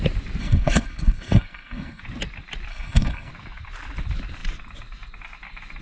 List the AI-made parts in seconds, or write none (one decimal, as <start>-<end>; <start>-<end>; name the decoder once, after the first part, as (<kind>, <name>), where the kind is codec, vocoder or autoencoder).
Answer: 0.4-2.0 (codec, SNAC); 2.7-3.3